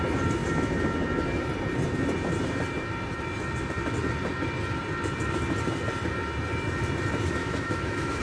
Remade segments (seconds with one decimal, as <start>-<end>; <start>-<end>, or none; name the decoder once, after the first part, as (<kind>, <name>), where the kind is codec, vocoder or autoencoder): 7.4-8.2 (autoencoder, DAC-VAE)